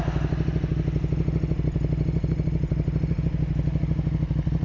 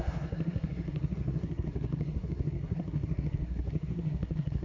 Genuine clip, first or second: first